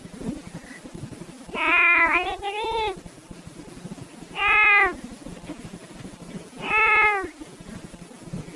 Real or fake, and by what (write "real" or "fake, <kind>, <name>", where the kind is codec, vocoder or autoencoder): real